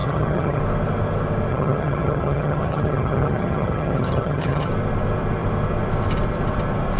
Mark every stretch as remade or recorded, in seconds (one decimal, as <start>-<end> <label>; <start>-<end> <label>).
0.0-0.6 remade; 0.6-1.5 recorded; 1.5-4.7 remade; 4.7-7.0 recorded